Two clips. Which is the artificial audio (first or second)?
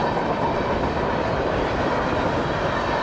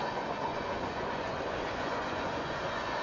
second